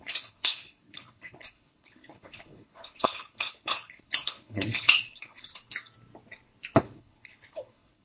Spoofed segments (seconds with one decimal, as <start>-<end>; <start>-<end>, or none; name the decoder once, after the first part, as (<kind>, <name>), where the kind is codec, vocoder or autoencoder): 0.0-5.5 (codec, HILCodec); 6.8-8.0